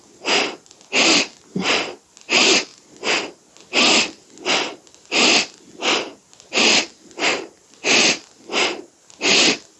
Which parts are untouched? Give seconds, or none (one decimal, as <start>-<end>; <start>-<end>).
0.0-9.8